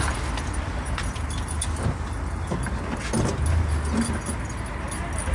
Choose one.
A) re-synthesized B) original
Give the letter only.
B